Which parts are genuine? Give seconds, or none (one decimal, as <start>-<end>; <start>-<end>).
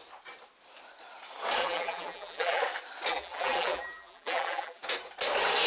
0.0-1.6; 2.6-3.1; 4.8-5.7